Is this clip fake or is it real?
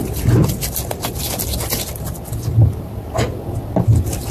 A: real